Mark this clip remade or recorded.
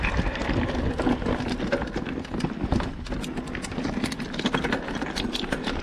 recorded